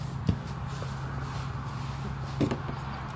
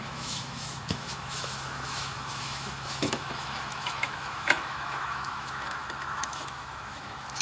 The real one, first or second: first